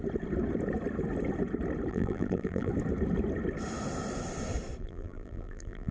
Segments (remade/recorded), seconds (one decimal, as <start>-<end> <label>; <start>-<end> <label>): 0.0-1.9 recorded; 1.9-2.7 remade; 2.7-4.8 recorded; 4.8-5.9 remade